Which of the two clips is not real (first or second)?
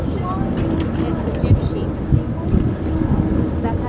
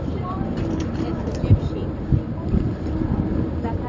second